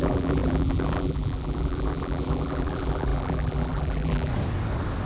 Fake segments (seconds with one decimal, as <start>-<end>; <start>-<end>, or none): 0.0-4.3